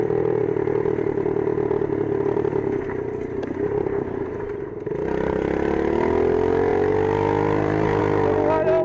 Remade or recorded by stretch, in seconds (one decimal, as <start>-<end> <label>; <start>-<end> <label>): 0.0-8.8 recorded